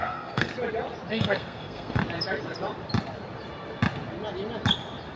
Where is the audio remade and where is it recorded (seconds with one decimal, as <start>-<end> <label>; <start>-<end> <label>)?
0.0-0.5 remade; 0.5-1.1 recorded; 1.1-2.0 remade; 2.0-5.2 recorded